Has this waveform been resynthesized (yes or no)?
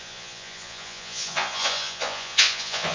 yes